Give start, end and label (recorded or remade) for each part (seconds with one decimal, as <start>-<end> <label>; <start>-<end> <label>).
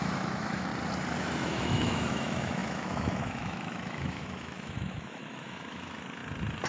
0.0-0.7 remade; 0.7-1.2 recorded; 1.2-6.2 remade; 6.2-6.7 recorded